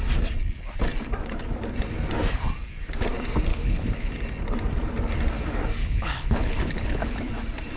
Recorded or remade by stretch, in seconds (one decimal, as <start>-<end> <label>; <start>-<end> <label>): 0.0-3.5 recorded; 3.5-4.1 remade; 4.1-5.8 recorded; 5.8-7.3 remade; 7.3-7.8 recorded